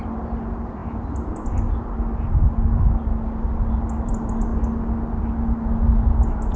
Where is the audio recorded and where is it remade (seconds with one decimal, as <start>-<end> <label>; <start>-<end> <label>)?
0.0-6.6 recorded